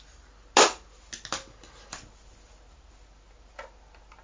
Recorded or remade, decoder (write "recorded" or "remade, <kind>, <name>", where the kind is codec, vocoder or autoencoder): recorded